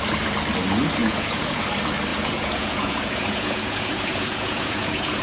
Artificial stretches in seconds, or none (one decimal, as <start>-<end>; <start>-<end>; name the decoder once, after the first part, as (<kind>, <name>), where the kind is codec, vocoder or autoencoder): 1.0-1.6 (vocoder, Vocos); 2.1-5.2